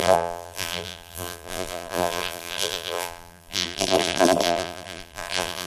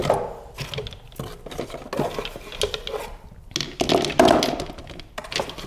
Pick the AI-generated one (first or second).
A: first